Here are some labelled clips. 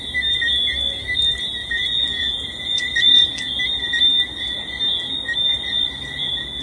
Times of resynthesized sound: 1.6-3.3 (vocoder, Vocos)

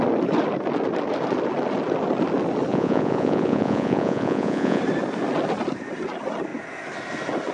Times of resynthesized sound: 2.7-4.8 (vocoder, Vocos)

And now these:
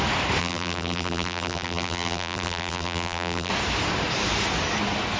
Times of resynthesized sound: 0.4-3.5 (vocoder, BigVGAN v2)

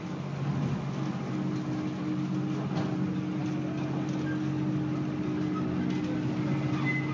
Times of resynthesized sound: none

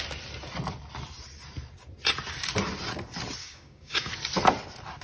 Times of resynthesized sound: 3.4-4.1 (codec, DAC)

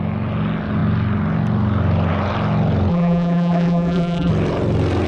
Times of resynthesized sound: 2.9-4.3 (vocoder, BigVGAN v2)